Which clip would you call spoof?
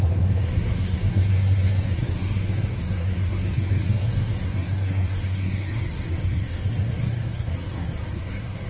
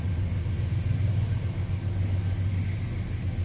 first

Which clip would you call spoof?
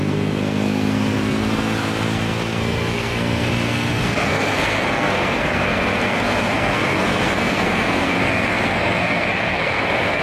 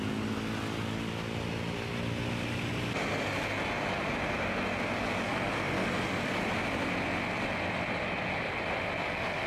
first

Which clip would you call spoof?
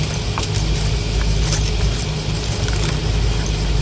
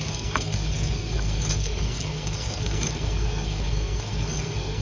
second